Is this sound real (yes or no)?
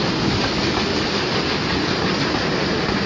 yes